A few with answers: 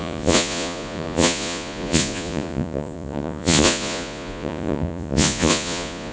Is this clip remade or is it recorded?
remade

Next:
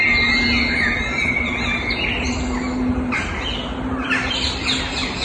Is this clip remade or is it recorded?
recorded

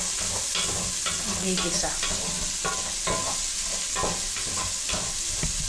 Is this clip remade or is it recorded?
recorded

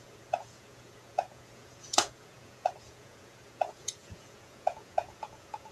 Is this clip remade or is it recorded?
remade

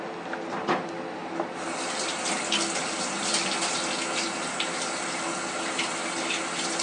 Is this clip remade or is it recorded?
recorded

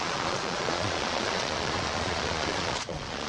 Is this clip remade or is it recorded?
remade